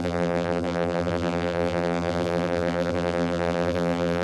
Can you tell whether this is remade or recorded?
remade